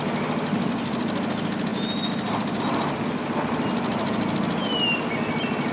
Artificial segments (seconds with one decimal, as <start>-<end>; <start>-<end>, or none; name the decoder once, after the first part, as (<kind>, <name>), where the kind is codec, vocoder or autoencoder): none